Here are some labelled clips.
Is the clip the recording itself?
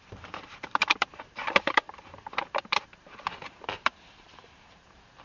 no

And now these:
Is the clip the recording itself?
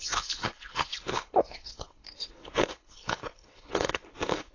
no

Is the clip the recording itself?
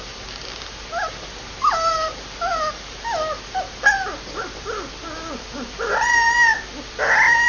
yes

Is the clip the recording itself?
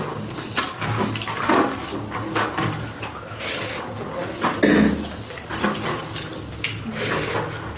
yes